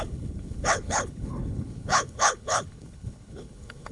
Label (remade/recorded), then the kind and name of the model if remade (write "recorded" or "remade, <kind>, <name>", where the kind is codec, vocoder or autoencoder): remade, codec, HILCodec